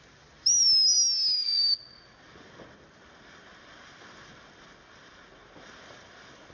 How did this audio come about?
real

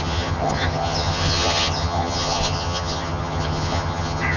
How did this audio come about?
fake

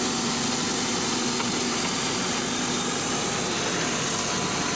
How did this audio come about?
real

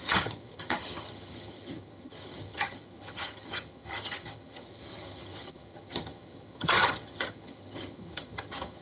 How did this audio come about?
fake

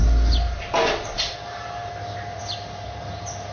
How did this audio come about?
real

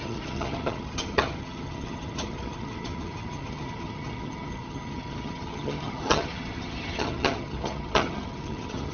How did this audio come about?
fake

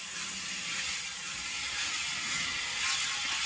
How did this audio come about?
real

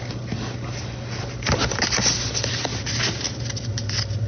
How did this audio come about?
real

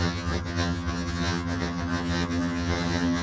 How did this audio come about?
fake